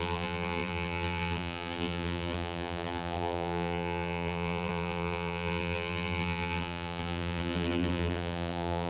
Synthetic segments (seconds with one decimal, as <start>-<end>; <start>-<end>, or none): 0.0-8.9